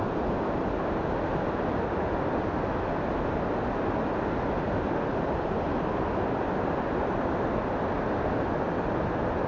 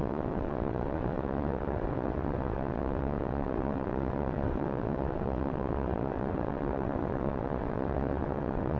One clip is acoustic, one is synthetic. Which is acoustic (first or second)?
first